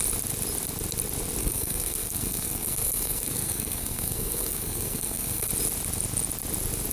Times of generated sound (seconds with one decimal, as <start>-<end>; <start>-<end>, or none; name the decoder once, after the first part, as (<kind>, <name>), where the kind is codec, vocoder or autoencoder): 1.4-5.5 (codec, SNAC)